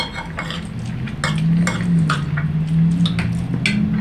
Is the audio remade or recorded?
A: recorded